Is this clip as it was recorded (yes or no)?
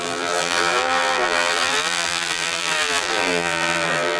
no